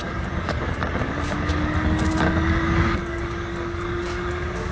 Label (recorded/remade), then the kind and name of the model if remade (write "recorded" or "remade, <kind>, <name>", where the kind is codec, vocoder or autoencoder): remade, codec, DAC